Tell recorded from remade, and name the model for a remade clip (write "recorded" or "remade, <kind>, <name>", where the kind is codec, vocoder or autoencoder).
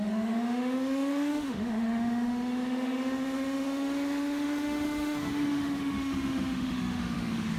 remade, autoencoder, DAC-VAE